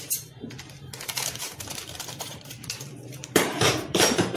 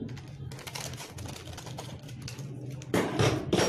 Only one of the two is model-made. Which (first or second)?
first